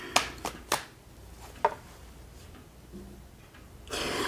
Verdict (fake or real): real